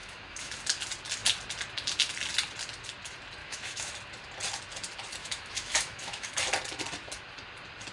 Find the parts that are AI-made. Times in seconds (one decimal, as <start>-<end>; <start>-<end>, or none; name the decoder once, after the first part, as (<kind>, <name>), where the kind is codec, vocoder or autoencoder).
0.0-0.6 (autoencoder, DAC-VAE); 3.4-3.9; 5.2-6.4